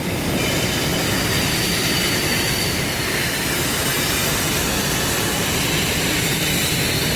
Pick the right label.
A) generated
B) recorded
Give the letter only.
B